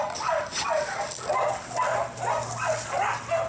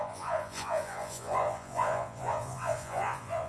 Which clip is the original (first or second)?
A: first